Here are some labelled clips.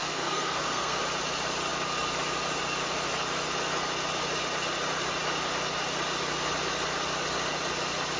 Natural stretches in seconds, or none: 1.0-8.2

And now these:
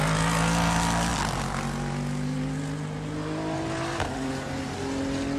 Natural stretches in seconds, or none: 0.0-5.4

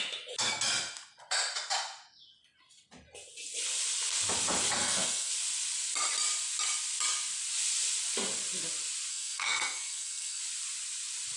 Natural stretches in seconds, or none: 0.0-4.8; 5.3-9.1; 10.4-11.4

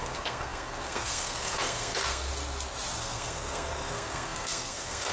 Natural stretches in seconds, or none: 2.3-3.0

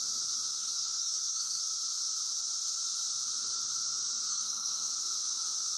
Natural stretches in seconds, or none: 0.0-0.5; 1.6-4.3; 4.9-5.8

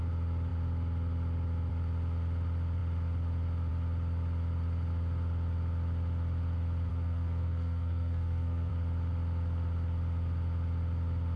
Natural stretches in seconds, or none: 0.0-6.9; 8.7-11.4

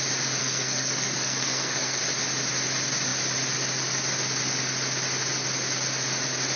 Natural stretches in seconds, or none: 0.0-0.4; 2.0-6.6